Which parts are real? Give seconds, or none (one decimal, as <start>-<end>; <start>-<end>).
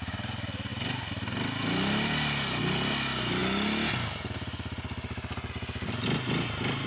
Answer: 0.0-6.9